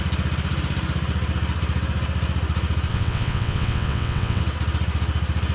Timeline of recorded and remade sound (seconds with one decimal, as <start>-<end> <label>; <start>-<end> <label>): 0.0-2.9 recorded; 2.9-4.4 remade; 4.4-5.5 recorded